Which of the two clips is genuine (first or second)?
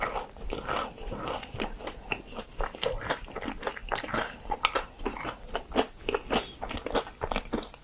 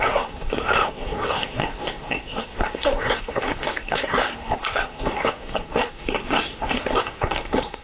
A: first